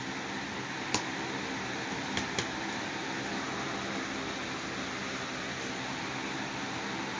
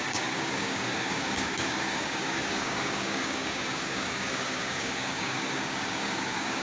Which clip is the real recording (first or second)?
first